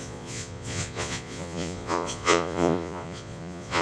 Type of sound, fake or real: fake